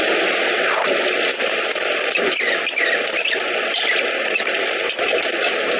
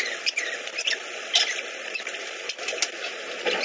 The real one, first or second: first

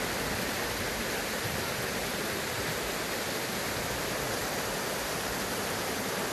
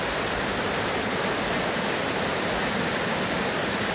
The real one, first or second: first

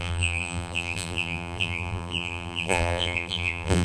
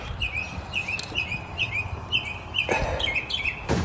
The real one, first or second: second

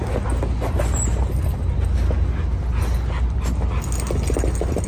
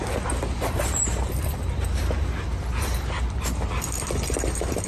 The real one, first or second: first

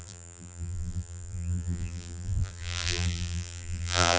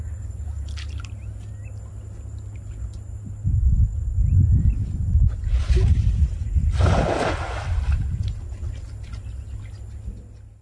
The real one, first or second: second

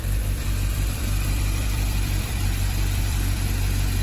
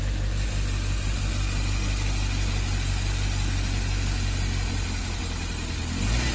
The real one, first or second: second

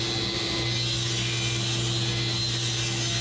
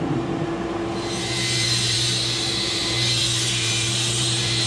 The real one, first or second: first